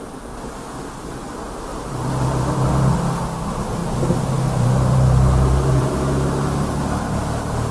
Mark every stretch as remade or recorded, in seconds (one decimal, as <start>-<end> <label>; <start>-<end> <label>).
0.0-1.7 recorded; 1.7-2.2 remade; 2.2-3.8 recorded; 3.8-5.9 remade; 5.9-7.7 recorded